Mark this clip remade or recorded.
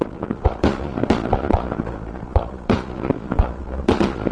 remade